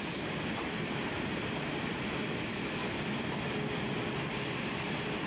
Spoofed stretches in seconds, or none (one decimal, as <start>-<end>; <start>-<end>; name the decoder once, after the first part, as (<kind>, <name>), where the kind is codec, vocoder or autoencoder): 0.0-2.8 (vocoder, BigVGAN v2); 4.2-5.3

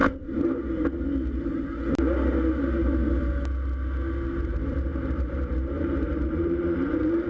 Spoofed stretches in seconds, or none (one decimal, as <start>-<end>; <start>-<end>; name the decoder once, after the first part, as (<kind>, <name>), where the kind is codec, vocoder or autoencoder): 4.4-7.3 (vocoder, BigVGAN v2)

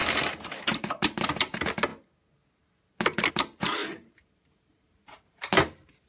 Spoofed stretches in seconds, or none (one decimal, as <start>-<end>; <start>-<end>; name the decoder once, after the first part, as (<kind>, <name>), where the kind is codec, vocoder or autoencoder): 0.0-1.2 (vocoder, BigVGAN v2); 3.8-6.1

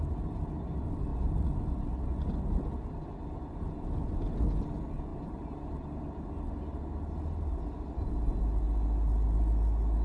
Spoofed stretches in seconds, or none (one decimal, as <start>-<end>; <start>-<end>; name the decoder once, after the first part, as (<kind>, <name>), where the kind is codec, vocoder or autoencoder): 5.1-5.7 (vocoder, BigVGAN v2)

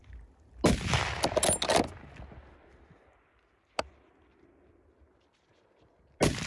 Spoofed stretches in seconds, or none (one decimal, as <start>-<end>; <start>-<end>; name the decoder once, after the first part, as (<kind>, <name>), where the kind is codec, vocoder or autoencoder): none

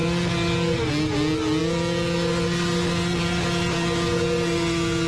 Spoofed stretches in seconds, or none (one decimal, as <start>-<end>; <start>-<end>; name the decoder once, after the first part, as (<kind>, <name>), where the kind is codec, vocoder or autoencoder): none

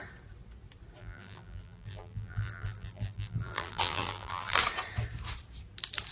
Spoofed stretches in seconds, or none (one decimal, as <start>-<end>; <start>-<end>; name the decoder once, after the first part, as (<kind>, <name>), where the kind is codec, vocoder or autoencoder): 1.0-4.6 (vocoder, BigVGAN v2)

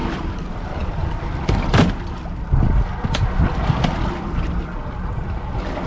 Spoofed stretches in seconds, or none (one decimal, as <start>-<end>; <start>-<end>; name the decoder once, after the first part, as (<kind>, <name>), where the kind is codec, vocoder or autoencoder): none